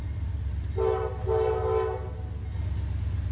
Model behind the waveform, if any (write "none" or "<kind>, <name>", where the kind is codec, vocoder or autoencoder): none